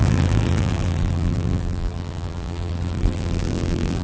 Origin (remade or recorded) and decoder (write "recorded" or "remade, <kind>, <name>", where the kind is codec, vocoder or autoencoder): remade, vocoder, BigVGAN v2